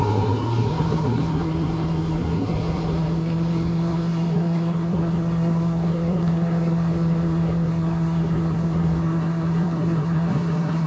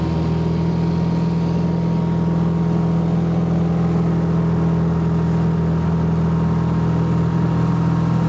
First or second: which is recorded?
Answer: second